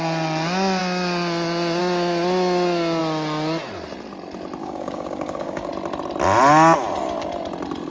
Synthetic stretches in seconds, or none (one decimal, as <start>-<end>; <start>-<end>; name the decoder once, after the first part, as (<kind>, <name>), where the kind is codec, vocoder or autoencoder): 4.6-5.7 (codec, DAC)